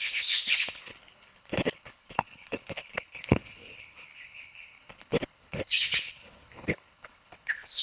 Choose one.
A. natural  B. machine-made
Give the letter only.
B